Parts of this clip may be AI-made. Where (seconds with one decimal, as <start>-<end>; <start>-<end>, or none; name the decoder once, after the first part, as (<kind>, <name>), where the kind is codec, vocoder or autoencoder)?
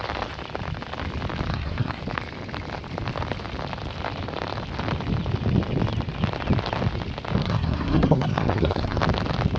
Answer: 1.5-2.0 (codec, SNAC); 7.4-9.0